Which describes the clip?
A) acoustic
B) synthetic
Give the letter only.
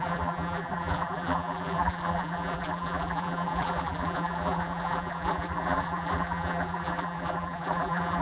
B